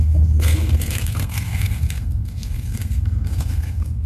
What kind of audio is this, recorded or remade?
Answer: remade